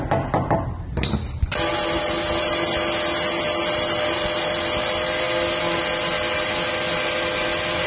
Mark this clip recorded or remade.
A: recorded